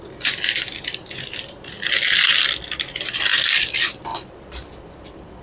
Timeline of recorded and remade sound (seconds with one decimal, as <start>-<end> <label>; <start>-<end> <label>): 0.0-5.4 recorded